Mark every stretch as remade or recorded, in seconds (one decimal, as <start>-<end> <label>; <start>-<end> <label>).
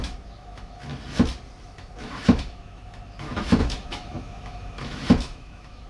0.0-0.9 remade; 0.9-1.6 recorded; 1.6-5.9 remade